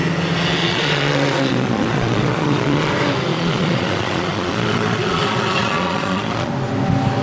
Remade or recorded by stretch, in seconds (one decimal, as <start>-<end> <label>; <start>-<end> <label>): 0.0-0.6 recorded; 0.6-2.9 remade; 2.9-3.3 recorded; 3.3-6.5 remade; 6.5-7.2 recorded